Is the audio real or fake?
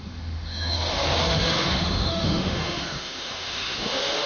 fake